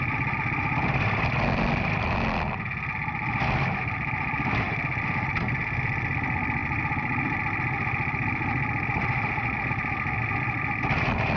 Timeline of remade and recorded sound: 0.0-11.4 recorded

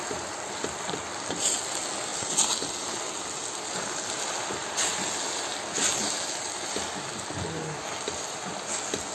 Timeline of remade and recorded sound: 0.0-9.1 recorded

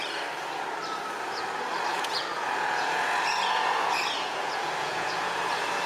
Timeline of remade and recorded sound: 0.0-1.9 recorded; 1.9-5.4 remade; 5.4-5.9 recorded